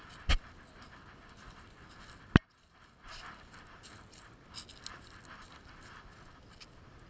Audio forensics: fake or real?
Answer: real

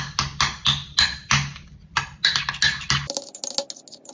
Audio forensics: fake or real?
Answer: real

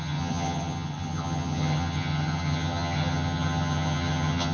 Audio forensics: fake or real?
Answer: fake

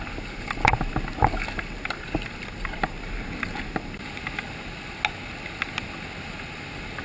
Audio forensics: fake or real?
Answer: real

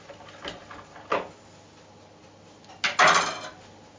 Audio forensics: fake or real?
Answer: real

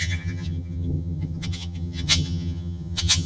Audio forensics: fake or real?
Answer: fake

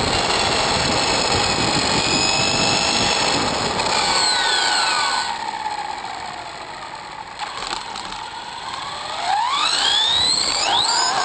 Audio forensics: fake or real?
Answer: real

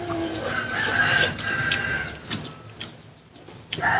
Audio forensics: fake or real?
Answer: real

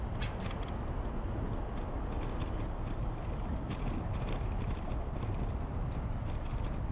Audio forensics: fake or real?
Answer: real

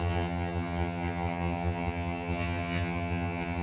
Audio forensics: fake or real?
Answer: fake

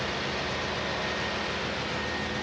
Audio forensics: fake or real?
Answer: real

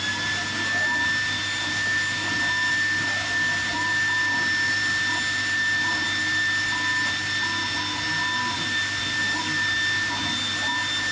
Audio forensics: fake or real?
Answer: real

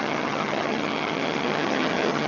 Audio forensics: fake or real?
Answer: fake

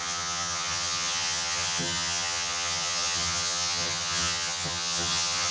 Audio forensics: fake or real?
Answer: fake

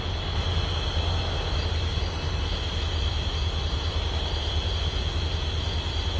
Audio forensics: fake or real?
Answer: real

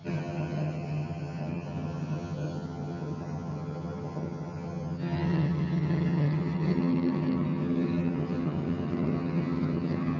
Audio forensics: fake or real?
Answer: fake